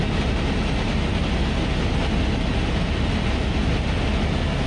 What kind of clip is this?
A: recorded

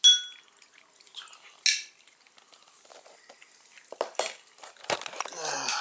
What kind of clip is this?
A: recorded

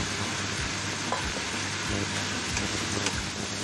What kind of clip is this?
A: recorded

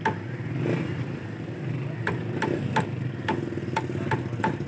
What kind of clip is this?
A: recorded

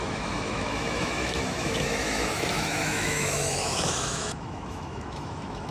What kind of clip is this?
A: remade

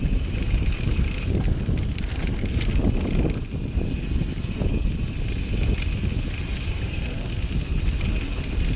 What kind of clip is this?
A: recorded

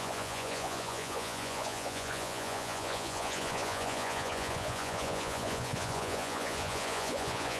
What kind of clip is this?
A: remade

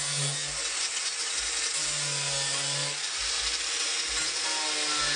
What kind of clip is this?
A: recorded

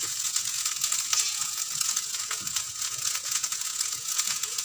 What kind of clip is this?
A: remade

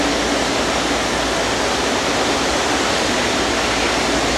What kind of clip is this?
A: recorded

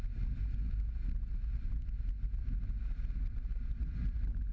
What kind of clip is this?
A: recorded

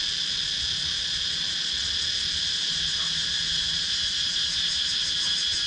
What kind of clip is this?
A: recorded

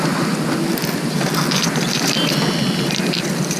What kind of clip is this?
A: recorded